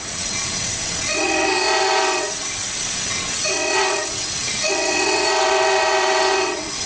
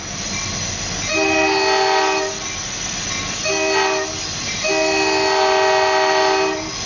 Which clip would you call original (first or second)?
second